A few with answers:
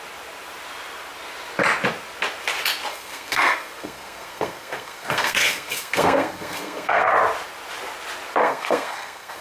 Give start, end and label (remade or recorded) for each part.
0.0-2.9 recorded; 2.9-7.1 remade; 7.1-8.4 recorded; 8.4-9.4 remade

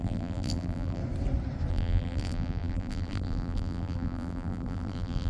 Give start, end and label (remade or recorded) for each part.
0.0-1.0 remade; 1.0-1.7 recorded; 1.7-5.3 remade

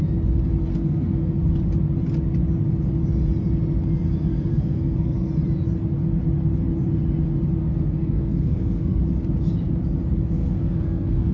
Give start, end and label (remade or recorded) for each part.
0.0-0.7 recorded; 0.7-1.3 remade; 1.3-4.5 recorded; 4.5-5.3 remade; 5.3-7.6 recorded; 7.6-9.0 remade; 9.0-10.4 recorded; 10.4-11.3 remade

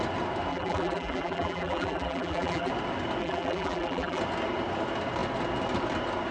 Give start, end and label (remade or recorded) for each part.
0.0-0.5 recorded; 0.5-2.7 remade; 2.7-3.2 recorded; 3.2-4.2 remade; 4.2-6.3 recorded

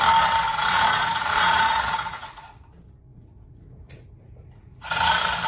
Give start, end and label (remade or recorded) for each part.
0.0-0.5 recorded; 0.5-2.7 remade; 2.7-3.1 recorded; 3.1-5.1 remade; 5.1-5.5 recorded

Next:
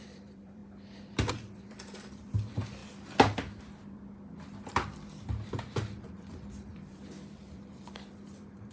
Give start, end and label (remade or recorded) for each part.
0.0-0.6 remade; 0.6-1.3 recorded; 1.3-2.8 remade; 2.8-6.3 recorded; 6.3-8.7 remade

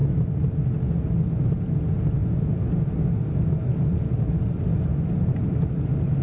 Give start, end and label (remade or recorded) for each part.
0.0-6.2 recorded